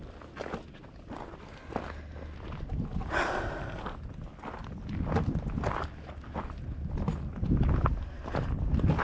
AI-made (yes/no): no